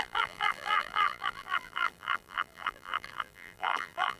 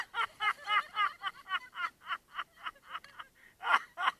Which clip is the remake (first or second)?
first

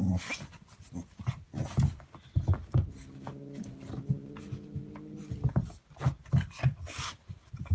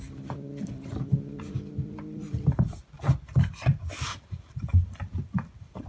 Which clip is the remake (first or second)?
second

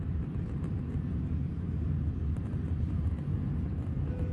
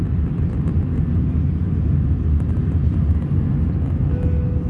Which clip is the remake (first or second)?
first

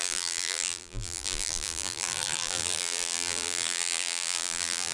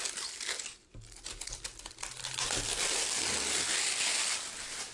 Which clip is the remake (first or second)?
first